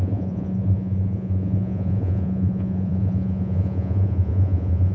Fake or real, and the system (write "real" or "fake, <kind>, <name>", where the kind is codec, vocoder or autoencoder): fake, vocoder, Vocos